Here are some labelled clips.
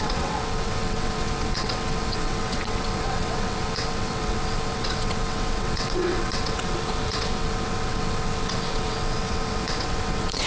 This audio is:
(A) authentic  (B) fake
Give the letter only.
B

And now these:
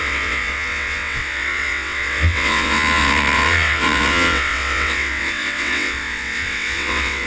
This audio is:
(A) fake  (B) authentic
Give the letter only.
A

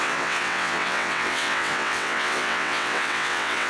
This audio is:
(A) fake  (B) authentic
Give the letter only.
A